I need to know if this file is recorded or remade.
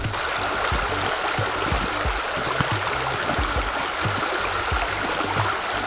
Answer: recorded